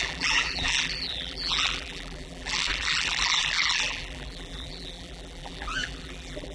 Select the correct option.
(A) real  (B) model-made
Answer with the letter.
B